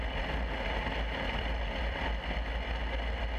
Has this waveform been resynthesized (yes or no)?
no